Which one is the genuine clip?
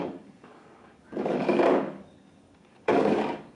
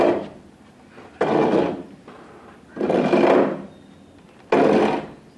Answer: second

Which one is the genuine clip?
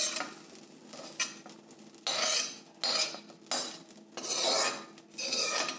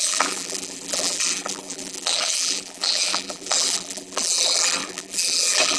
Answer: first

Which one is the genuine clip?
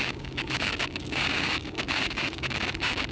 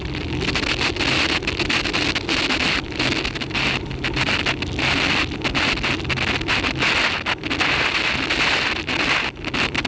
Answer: second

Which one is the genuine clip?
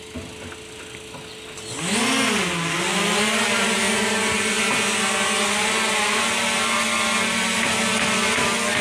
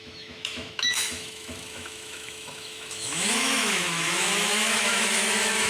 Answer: first